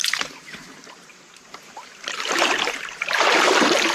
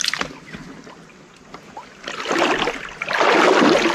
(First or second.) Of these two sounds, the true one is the second